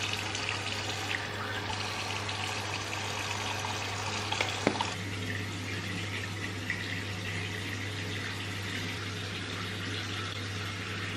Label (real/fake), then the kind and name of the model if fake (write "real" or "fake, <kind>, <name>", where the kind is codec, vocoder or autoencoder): real